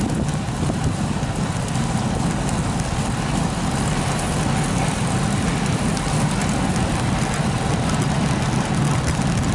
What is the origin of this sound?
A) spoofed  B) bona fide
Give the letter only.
B